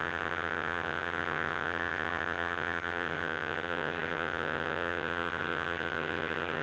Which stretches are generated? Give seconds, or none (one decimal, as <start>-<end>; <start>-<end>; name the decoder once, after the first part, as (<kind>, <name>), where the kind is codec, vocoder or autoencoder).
0.0-6.6 (vocoder, HiFi-GAN)